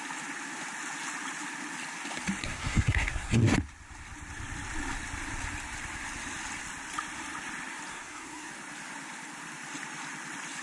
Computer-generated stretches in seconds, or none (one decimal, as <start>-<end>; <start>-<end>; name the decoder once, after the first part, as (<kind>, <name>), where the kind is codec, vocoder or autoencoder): 2.4-3.4 (codec, SNAC); 7.9-8.5